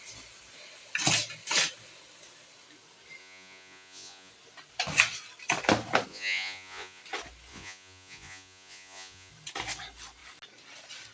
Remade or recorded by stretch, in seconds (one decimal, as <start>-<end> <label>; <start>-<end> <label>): 0.0-3.2 recorded; 3.2-4.3 remade; 4.3-6.1 recorded; 6.1-7.0 remade; 7.0-7.5 recorded; 7.5-9.3 remade; 9.3-11.1 recorded